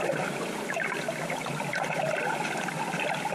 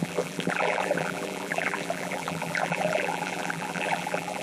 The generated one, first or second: second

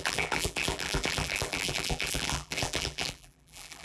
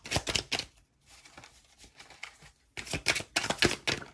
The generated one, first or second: first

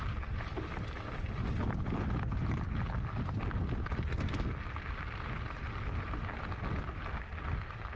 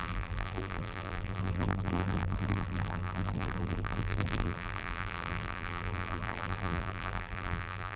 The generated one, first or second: second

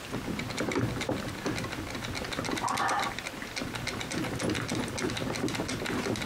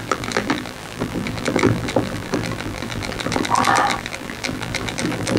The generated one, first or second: second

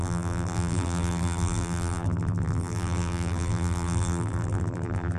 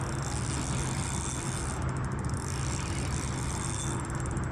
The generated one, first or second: first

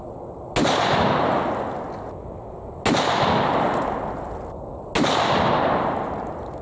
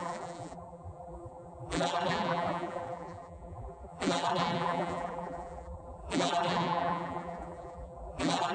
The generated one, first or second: second